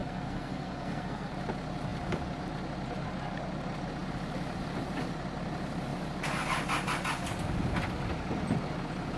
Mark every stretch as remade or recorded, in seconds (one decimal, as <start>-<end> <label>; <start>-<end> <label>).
0.0-1.3 remade; 1.3-9.2 recorded